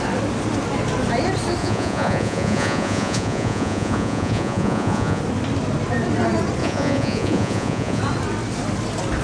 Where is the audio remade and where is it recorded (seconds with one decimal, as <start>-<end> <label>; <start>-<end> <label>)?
0.0-1.6 recorded; 1.6-5.2 remade; 5.2-6.6 recorded; 6.6-8.0 remade; 8.0-9.2 recorded